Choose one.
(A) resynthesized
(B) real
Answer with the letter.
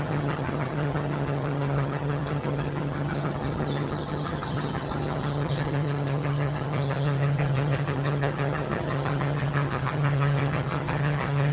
A